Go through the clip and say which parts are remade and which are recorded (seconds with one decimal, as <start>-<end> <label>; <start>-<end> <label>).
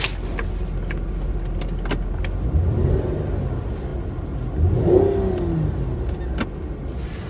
0.0-7.3 recorded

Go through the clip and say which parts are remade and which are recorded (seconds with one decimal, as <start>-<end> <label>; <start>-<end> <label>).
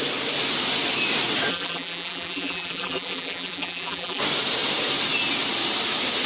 0.0-1.5 recorded; 1.5-4.2 remade; 4.2-6.3 recorded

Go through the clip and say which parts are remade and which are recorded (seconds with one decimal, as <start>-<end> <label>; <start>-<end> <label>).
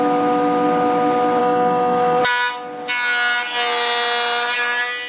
0.0-1.4 recorded; 1.4-2.2 remade; 2.2-5.1 recorded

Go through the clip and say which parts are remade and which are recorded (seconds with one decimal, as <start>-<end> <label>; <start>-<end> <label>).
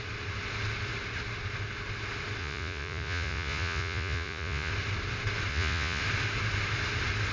0.0-2.4 recorded; 2.4-4.7 remade; 4.7-5.5 recorded; 5.5-6.0 remade; 6.0-7.3 recorded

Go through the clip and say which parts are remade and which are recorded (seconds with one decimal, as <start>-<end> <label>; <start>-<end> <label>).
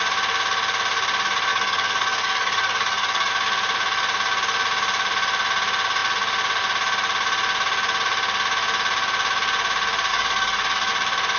0.0-1.5 recorded; 1.5-3.3 remade; 3.3-10.1 recorded; 10.1-10.9 remade; 10.9-11.4 recorded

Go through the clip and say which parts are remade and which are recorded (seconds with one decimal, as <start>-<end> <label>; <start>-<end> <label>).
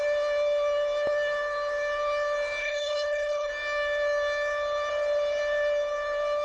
0.0-2.6 recorded; 2.6-3.5 remade; 3.5-6.4 recorded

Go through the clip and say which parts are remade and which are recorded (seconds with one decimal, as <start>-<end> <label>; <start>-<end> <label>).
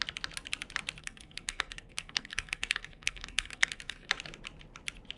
0.0-1.0 recorded; 1.0-4.1 remade; 4.1-5.2 recorded